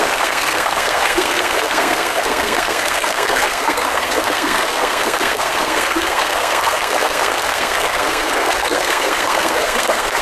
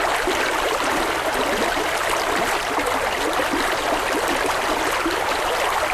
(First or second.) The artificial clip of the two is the first